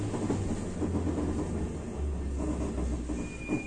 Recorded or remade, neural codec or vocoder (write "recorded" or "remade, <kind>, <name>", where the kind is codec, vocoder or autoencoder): recorded